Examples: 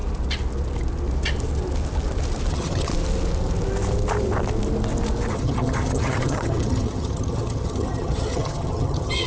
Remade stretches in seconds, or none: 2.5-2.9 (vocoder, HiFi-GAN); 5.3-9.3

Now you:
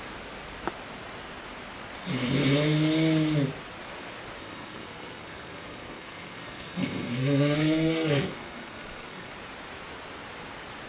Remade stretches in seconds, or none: 4.4-9.3 (codec, SNAC)

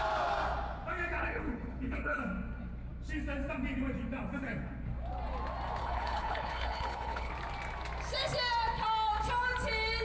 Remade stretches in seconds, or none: 1.2-2.2 (codec, HILCodec); 5.8-7.3

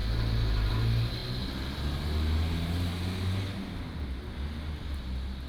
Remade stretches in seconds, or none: none